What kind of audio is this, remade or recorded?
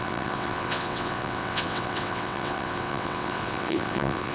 remade